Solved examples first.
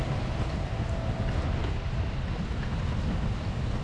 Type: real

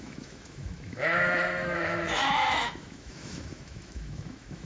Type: fake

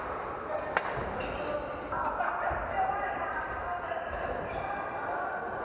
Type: real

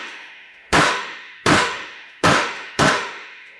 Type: fake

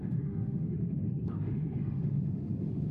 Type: fake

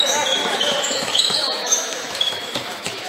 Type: fake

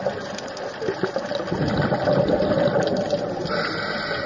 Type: real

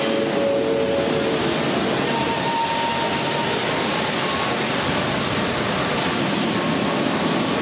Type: real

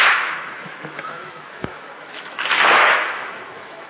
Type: fake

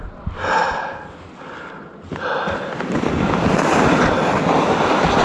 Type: real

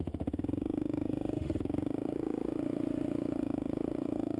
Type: fake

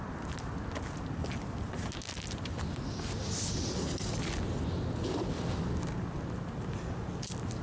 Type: real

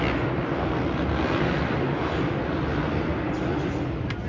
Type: real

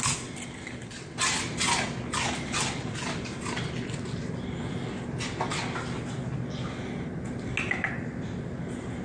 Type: real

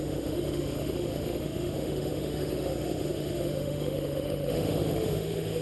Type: fake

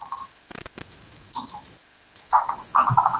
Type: fake